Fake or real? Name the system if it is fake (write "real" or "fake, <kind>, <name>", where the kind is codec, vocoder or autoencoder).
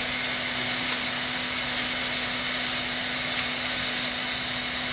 real